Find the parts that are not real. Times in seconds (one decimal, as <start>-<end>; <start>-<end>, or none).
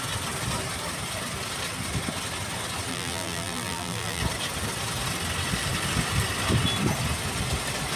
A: 2.9-4.2